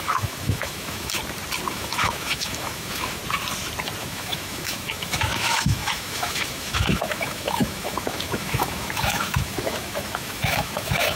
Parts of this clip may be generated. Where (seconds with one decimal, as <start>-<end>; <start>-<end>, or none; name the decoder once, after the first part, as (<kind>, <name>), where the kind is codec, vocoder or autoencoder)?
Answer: 0.0-1.2 (autoencoder, DAC-VAE); 1.7-3.2; 4.0-11.2